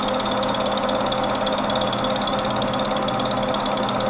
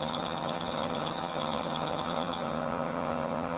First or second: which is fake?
second